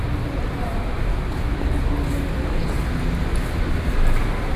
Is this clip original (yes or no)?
yes